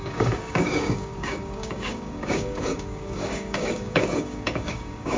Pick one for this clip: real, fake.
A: fake